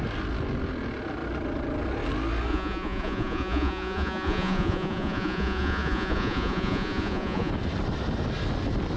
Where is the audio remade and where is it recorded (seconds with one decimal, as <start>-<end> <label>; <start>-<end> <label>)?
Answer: 0.0-2.5 recorded; 2.5-7.5 remade; 7.5-9.0 recorded